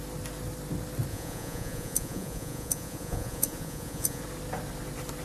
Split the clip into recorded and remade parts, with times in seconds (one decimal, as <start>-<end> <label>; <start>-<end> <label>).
0.0-1.1 recorded; 1.1-4.2 remade; 4.2-5.2 recorded